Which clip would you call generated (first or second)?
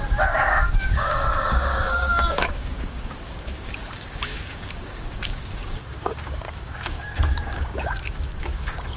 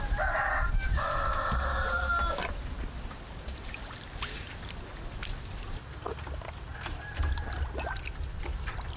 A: first